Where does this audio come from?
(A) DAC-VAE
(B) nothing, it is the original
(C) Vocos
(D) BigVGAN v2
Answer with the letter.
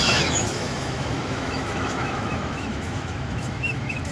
A